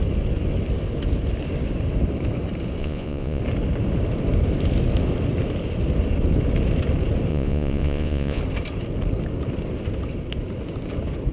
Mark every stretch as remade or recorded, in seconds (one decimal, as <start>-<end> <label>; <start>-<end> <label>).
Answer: 0.0-2.8 recorded; 2.8-3.4 remade; 3.4-7.3 recorded; 7.3-8.4 remade; 8.4-11.3 recorded